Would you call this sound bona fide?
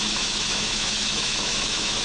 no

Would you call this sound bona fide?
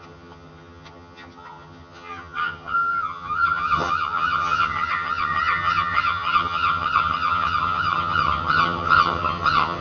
no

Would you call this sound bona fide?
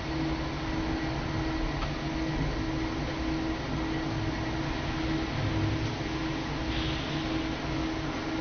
yes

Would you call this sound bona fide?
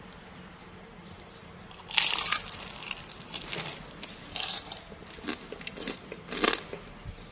yes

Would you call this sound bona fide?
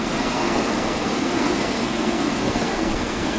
no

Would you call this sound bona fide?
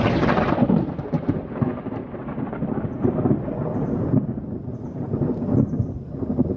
yes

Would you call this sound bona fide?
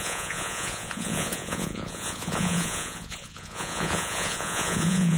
no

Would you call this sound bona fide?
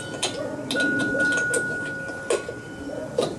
yes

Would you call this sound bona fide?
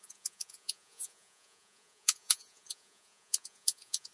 no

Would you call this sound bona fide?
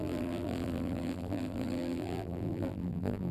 no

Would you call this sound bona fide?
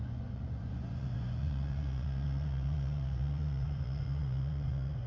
no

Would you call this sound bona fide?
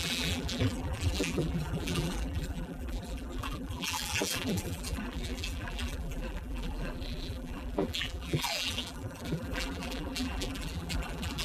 no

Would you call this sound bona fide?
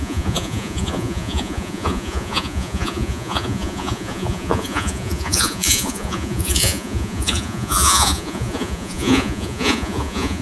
no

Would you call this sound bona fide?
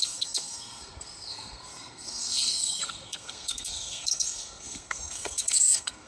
no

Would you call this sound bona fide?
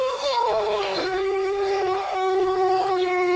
no